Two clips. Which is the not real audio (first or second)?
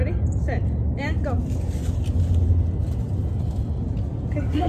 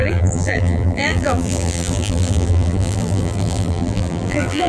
second